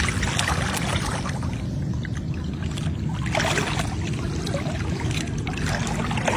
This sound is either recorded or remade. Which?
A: recorded